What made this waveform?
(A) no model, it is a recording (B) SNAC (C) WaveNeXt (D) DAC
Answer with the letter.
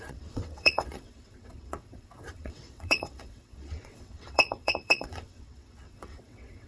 C